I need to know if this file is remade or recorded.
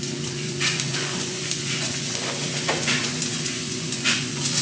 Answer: remade